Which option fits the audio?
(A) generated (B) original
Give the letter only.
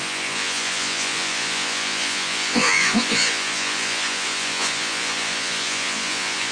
A